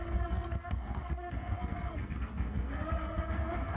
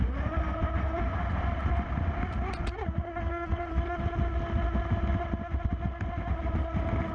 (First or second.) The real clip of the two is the second